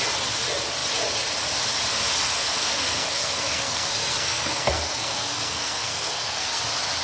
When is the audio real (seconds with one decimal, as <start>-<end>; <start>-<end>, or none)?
0.0-2.4; 6.6-7.0